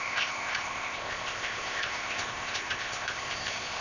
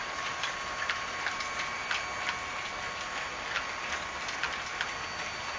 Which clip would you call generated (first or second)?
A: first